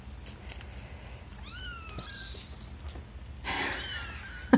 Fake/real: real